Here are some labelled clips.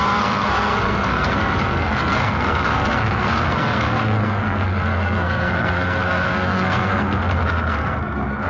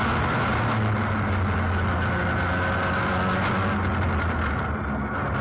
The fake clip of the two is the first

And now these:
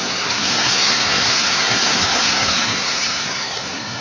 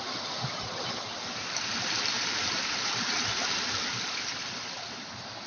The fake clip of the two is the first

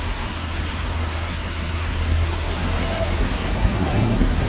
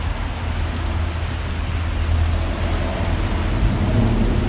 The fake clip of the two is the first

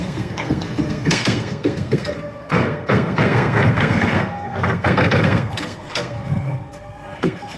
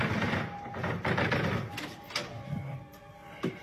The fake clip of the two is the first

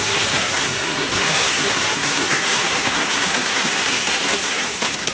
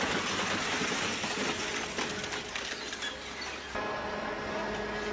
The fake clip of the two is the first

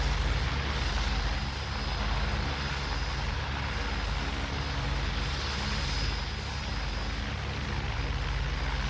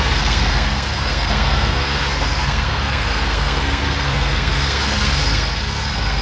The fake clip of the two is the second